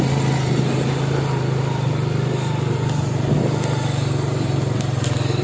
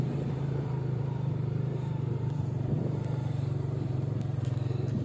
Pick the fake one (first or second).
second